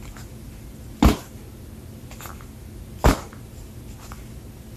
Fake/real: real